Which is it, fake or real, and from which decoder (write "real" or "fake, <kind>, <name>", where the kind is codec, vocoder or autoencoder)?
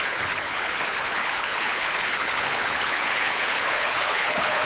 fake, codec, HILCodec